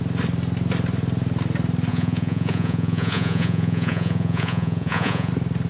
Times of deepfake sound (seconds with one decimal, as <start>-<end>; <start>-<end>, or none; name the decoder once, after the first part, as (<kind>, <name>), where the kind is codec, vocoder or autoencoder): 1.9-5.3 (vocoder, Vocos)